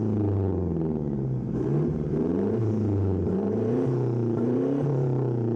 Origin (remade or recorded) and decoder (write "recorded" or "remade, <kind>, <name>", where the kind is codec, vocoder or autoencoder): remade, vocoder, BigVGAN v2